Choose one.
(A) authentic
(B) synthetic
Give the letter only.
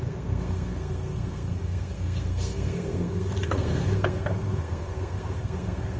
B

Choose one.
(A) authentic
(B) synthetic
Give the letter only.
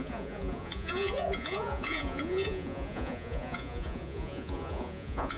B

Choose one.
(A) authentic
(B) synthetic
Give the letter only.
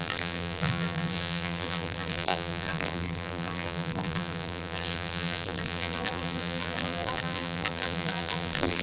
B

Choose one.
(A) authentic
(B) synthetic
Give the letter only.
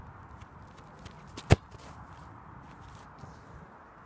A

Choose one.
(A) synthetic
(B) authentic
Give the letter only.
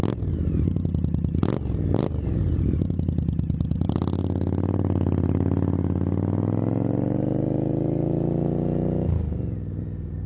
B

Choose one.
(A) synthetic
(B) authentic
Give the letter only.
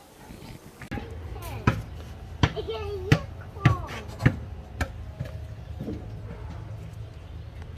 B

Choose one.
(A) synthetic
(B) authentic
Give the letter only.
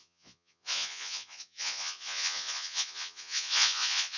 A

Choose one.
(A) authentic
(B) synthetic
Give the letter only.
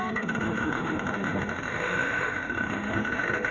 B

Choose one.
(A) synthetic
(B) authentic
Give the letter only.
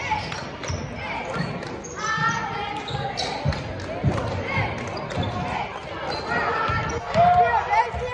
B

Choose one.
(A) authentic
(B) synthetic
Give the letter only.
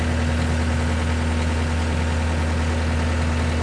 A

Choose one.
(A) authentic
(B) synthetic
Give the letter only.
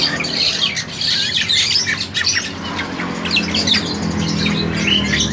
A